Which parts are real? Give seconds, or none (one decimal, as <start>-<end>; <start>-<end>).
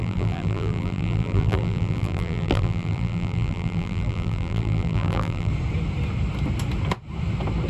5.5-7.7